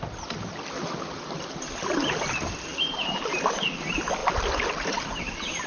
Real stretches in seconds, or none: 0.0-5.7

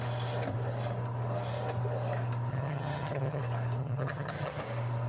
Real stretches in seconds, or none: 0.0-2.5; 3.4-3.8; 4.6-5.1

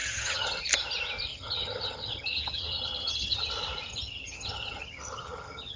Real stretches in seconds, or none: 0.6-1.3; 3.5-3.9

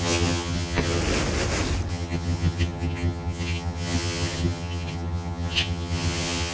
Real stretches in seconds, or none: 1.0-1.9